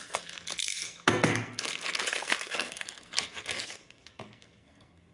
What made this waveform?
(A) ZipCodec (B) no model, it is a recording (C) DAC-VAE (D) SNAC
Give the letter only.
D